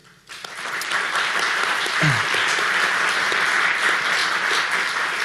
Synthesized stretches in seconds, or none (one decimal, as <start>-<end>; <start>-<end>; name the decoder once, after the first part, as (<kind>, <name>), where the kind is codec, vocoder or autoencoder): none